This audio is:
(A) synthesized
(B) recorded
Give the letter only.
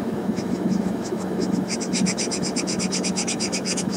A